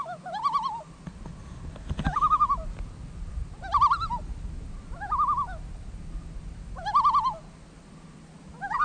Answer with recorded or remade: recorded